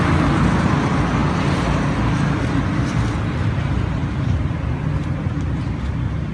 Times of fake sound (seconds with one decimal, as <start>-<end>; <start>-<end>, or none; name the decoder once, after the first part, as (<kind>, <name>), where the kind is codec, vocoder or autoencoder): 4.0-4.6 (vocoder, BigVGAN v2)